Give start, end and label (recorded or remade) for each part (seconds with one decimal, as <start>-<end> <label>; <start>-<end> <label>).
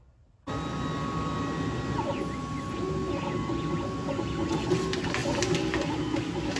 0.0-6.6 recorded